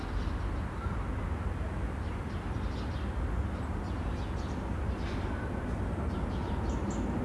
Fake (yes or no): no